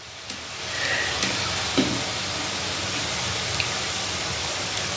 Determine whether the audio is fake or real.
real